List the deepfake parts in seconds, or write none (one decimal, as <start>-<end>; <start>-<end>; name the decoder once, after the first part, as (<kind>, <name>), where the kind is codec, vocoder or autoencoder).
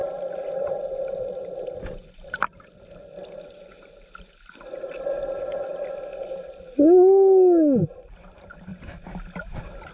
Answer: none